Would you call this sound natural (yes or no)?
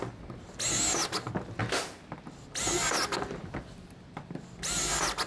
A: yes